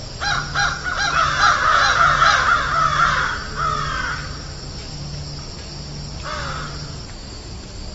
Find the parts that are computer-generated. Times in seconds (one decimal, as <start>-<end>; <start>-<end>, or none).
0.0-2.2